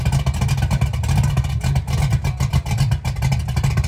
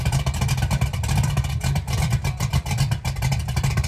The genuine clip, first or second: first